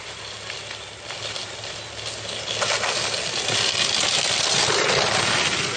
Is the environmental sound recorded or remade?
recorded